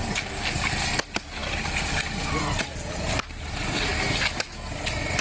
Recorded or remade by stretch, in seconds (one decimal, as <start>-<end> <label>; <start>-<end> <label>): 0.0-1.4 recorded; 1.4-3.9 remade; 3.9-5.2 recorded